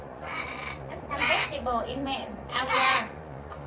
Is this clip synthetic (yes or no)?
yes